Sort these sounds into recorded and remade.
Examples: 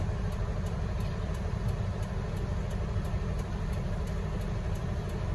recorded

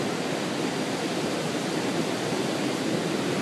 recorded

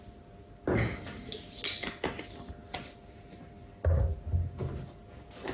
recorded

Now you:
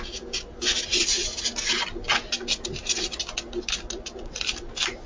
recorded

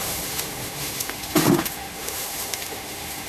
remade